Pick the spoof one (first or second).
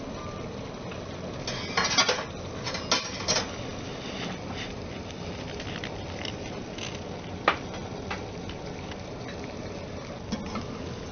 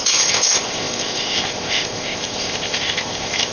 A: second